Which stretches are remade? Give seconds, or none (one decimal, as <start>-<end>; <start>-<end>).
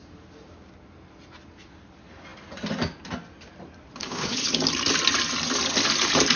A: 4.0-4.5